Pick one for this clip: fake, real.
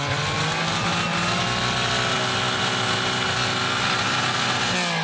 real